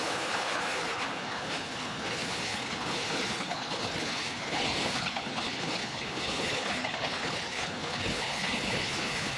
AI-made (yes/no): yes